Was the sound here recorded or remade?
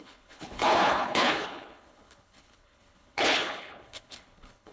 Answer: remade